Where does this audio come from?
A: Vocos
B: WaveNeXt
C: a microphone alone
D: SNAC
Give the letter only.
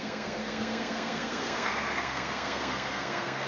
D